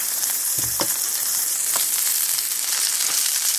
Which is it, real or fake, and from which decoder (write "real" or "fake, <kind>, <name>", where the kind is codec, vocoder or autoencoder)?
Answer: fake, vocoder, BigVGAN v2